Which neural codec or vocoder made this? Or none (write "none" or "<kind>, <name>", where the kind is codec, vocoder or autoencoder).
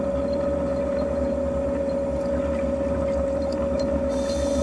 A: none